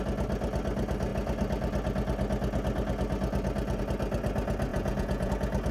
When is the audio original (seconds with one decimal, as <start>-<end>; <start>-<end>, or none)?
0.0-4.7; 5.3-5.7